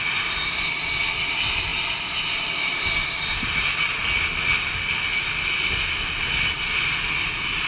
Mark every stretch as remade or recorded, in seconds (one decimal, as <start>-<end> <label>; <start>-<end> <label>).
0.0-7.7 recorded